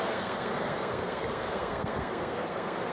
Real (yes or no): no